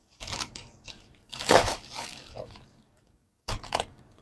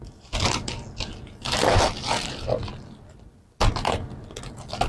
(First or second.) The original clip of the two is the second